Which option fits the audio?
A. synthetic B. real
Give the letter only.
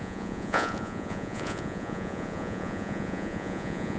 A